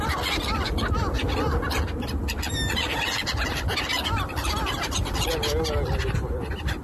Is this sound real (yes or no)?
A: yes